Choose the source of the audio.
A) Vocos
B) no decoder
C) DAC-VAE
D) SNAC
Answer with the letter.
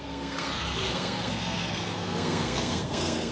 D